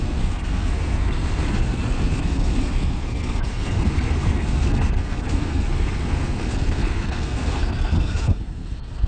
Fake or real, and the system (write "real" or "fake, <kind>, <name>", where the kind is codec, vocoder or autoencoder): fake, codec, SNAC